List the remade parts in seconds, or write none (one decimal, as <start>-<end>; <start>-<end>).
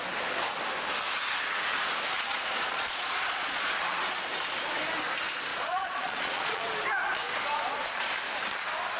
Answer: 2.3-3.7; 5.5-6.6